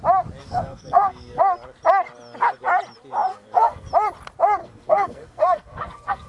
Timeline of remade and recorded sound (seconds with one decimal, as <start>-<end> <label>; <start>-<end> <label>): 0.0-0.4 recorded; 0.4-1.4 remade; 1.4-3.3 recorded; 3.3-3.9 remade; 3.9-4.6 recorded; 4.6-6.3 remade